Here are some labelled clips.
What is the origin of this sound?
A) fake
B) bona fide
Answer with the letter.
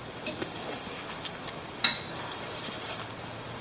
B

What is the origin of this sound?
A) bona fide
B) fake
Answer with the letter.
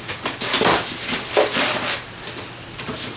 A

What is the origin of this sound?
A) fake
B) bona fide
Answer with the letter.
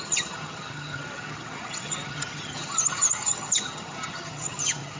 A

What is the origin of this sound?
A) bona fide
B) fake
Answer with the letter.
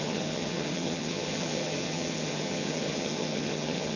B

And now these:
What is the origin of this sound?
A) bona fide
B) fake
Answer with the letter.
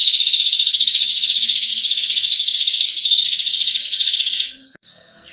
B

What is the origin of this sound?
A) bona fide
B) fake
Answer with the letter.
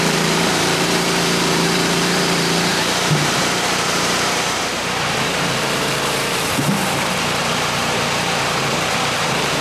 B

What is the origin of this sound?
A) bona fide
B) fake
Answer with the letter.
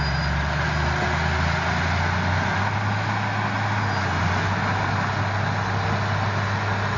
A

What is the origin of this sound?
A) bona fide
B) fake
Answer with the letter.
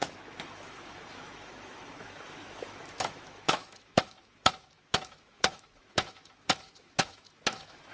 B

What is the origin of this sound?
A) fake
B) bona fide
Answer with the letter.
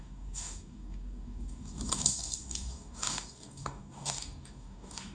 A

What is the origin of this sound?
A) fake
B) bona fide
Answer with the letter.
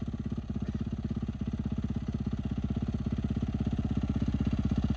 B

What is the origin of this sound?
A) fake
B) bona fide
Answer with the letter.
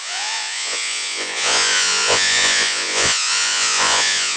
A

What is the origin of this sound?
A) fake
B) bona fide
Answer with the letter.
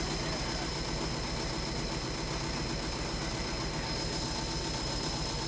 B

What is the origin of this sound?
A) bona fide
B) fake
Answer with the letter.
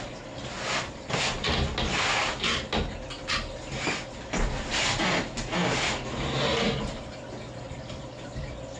A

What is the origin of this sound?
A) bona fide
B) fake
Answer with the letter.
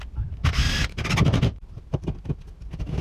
A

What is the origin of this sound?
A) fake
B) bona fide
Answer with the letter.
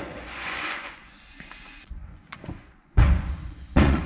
A